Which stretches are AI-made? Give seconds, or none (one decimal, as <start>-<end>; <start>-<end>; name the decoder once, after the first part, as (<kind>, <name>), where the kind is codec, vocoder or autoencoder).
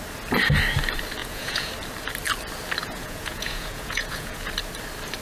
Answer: 1.2-1.7 (vocoder, Vocos); 2.8-4.5